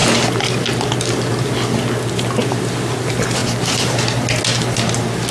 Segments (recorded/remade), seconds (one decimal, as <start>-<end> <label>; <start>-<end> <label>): 0.0-5.3 recorded